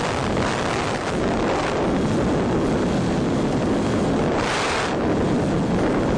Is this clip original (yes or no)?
yes